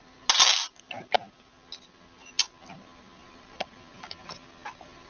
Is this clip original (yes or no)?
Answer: yes